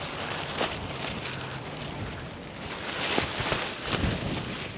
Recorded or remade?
recorded